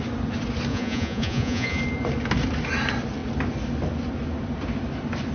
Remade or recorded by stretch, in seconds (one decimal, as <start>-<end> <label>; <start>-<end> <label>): 0.0-0.7 recorded; 0.7-1.8 remade; 1.8-5.3 recorded